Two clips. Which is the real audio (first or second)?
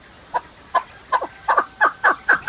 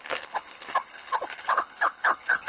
first